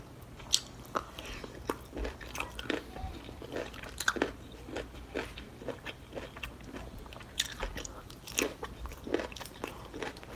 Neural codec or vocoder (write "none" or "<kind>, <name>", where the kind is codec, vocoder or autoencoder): none